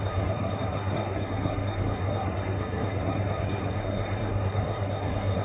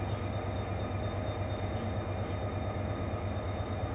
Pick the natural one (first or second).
second